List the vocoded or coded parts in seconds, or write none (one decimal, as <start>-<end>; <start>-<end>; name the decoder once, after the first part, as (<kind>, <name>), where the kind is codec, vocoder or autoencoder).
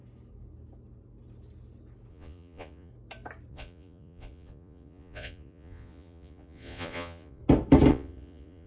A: 2.1-2.9 (vocoder, Vocos); 3.5-7.4; 7.9-8.7